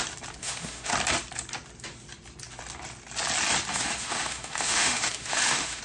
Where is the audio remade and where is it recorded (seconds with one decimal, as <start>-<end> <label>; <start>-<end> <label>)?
0.0-0.4 recorded; 0.4-0.9 remade; 0.9-3.7 recorded; 3.7-5.8 remade